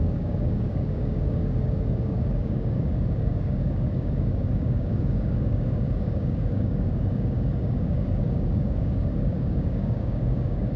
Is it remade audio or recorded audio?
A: remade